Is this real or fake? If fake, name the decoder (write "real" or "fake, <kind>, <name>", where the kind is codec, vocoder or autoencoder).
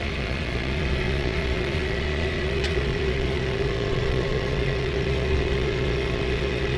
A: fake, vocoder, Vocos